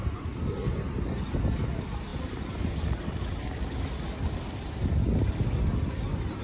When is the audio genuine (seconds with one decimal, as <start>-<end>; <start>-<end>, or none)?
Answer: 0.0-6.4

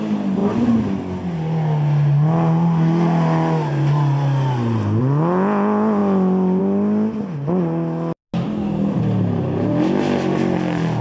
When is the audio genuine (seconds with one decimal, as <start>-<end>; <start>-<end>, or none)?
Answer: 0.0-11.0

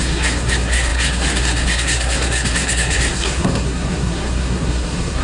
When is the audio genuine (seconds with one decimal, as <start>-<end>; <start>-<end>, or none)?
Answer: none